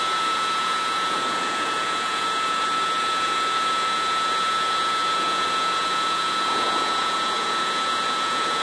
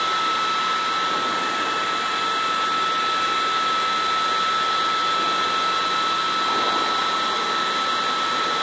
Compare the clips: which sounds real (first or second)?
second